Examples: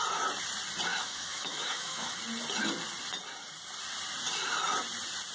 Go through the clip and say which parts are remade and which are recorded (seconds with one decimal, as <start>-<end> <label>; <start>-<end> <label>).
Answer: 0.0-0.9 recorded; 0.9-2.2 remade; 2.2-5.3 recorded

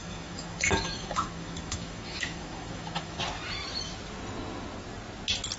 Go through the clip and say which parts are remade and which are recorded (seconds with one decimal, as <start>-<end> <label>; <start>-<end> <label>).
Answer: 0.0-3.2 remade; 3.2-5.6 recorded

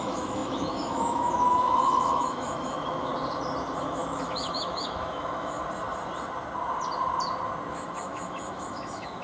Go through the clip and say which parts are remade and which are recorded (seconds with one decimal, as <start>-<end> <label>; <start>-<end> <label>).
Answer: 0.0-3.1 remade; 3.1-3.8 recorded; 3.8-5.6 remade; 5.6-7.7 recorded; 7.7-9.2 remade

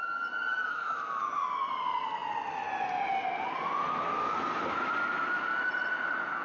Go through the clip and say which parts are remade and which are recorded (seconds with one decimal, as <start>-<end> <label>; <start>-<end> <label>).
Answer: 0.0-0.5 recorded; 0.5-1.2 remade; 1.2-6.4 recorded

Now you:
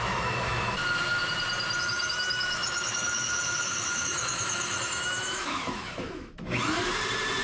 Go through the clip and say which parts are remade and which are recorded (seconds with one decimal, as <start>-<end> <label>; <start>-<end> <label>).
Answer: 0.0-0.8 remade; 0.8-1.8 recorded; 1.8-6.8 remade; 6.8-7.4 recorded

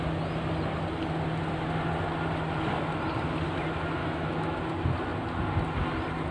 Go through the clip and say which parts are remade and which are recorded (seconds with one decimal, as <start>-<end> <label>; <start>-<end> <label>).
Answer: 0.0-4.0 recorded; 4.0-4.6 remade; 4.6-6.3 recorded